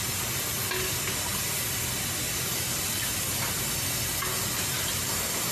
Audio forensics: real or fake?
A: real